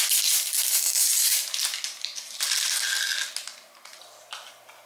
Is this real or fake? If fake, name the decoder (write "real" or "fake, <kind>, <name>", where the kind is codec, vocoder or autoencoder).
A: real